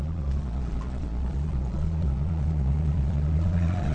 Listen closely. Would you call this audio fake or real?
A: fake